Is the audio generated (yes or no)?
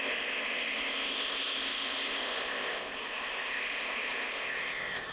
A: yes